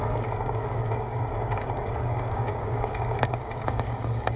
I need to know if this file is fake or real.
fake